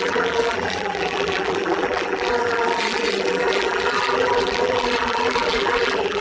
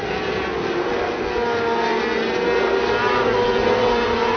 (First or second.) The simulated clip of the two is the first